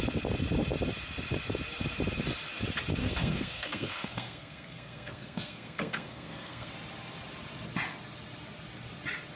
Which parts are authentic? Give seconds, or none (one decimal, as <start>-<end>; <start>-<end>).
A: 0.0-3.0; 6.7-9.4